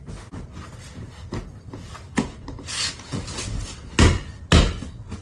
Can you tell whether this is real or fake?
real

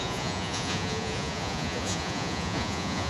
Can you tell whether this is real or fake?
fake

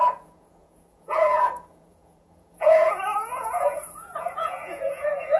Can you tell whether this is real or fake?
fake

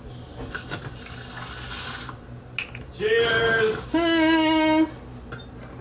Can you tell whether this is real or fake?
real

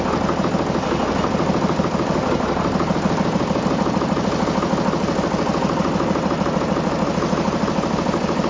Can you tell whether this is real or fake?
real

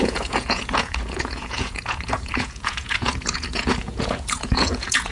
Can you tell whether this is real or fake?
fake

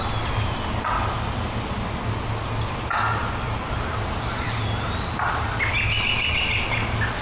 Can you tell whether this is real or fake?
real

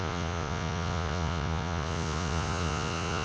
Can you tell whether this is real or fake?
fake